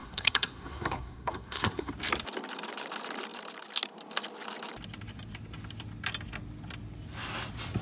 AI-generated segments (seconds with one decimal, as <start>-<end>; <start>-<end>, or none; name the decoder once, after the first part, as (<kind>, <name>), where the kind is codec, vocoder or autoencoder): 0.0-1.9 (codec, SNAC)